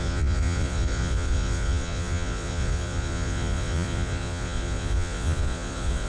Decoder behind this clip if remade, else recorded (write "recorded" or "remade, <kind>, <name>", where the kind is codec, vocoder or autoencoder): remade, vocoder, Vocos